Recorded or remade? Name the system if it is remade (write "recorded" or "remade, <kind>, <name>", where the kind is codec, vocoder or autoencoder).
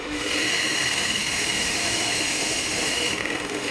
remade, autoencoder, DAC-VAE